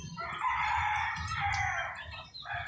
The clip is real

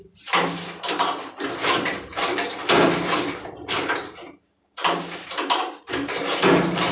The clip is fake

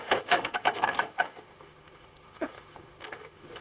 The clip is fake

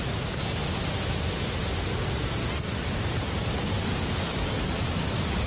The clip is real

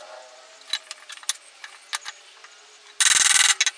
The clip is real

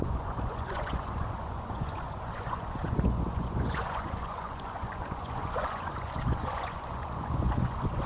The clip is fake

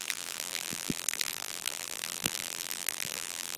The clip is fake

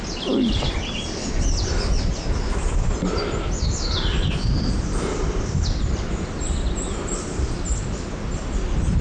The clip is real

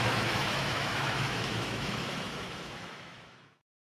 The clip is fake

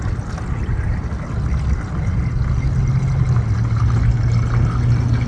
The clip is real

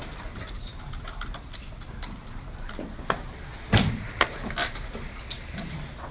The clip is real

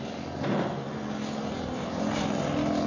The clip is real